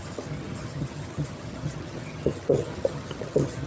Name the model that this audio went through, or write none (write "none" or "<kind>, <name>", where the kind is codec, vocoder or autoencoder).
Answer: vocoder, HiFi-GAN